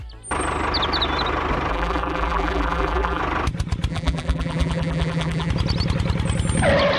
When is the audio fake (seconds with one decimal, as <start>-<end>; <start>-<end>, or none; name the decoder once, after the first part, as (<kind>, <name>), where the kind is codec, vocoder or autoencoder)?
1.7-3.2 (vocoder, BigVGAN v2); 3.9-5.5